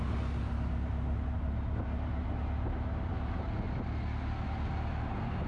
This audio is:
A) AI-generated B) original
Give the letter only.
B